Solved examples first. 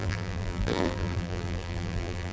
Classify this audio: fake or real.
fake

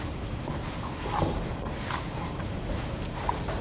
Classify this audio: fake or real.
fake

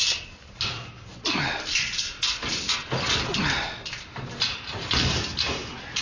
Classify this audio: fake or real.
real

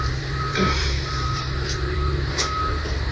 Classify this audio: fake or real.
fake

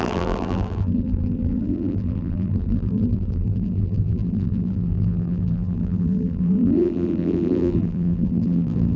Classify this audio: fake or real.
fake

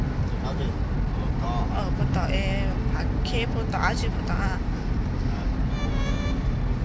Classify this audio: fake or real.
real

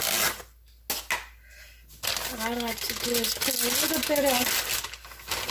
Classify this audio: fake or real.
real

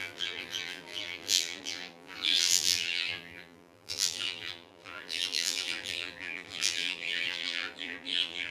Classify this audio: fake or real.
fake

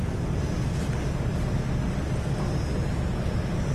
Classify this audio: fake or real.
real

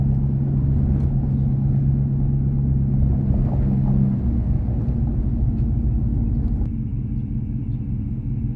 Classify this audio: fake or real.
real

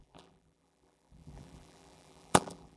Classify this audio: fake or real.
fake